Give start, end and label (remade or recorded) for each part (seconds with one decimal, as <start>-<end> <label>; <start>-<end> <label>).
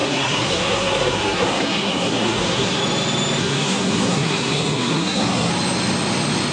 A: 0.0-2.8 remade; 2.8-3.4 recorded; 3.4-5.5 remade; 5.5-6.5 recorded